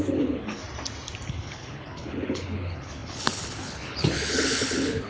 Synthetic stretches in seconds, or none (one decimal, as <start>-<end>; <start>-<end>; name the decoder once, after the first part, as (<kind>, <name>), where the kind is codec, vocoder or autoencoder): 0.0-0.6 (codec, HILCodec); 1.3-5.1